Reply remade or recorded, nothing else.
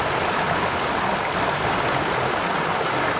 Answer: recorded